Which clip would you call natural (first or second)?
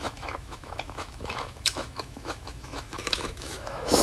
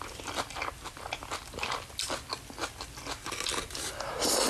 second